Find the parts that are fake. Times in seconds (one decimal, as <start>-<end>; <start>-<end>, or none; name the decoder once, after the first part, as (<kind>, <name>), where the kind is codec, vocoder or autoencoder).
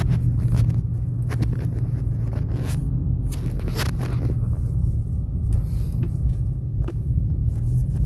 none